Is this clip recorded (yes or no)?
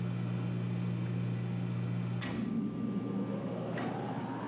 yes